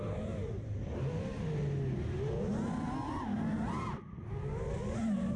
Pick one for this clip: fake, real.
real